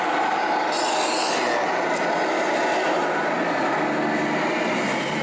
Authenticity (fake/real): real